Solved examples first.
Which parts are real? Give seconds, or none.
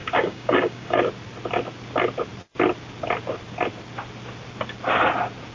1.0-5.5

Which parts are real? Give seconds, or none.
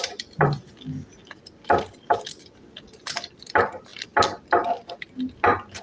0.0-5.8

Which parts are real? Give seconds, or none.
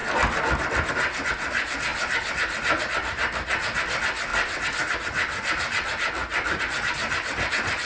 0.0-7.9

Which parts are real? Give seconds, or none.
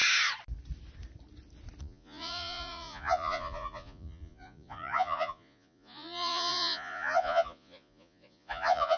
0.0-1.8